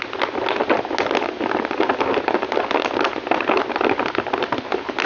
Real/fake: real